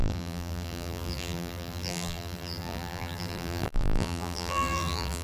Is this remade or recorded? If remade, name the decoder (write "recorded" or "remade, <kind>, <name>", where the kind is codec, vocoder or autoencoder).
remade, vocoder, BigVGAN v2